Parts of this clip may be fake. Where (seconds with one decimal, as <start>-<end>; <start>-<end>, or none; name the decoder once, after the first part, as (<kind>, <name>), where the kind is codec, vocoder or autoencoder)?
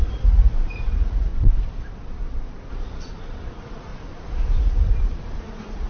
0.0-1.3 (vocoder, Vocos); 2.7-3.9; 4.6-5.9